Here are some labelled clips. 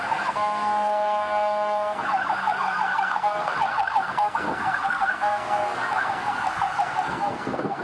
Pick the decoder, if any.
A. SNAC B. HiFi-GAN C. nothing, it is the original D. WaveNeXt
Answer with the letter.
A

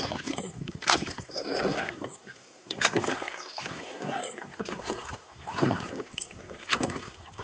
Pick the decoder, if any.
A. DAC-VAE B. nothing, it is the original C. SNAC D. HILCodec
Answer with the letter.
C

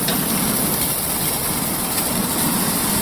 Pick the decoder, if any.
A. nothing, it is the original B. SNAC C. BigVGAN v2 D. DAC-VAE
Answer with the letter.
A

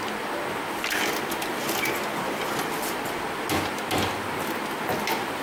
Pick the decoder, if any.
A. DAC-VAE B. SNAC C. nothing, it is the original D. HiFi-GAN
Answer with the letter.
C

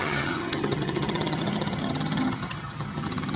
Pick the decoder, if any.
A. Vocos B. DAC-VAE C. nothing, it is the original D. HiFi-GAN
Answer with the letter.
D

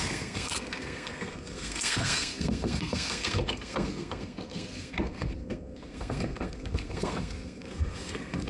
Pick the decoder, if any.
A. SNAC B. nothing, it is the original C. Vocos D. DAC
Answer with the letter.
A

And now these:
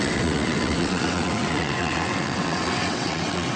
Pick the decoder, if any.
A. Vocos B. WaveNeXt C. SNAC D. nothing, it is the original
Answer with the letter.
B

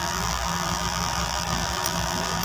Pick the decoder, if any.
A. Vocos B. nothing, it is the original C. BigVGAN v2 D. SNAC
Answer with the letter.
C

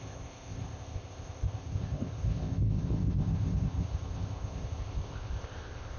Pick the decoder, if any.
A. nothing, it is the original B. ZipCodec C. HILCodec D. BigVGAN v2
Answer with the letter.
B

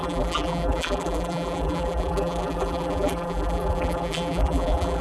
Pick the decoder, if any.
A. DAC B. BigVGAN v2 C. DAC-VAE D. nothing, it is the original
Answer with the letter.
B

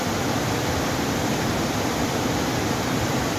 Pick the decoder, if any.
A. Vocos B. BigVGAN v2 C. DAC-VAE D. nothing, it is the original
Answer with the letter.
B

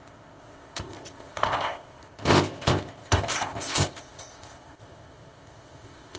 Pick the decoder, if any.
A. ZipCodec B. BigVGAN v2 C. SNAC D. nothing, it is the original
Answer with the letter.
A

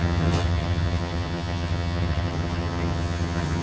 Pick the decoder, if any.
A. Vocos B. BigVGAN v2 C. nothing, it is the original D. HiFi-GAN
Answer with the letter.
D